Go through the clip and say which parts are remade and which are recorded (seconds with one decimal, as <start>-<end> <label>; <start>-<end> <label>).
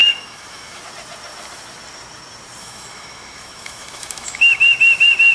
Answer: 0.0-0.8 remade; 0.8-2.6 recorded; 2.6-4.6 remade; 4.6-5.3 recorded